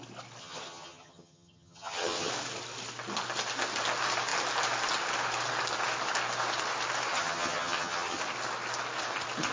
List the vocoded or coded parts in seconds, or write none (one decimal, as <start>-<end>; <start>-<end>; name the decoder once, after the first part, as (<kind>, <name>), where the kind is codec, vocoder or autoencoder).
0.4-2.3 (vocoder, HiFi-GAN); 7.1-8.2